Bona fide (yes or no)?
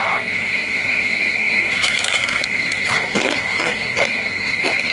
no